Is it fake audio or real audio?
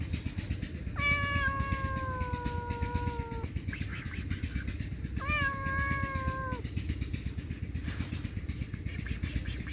real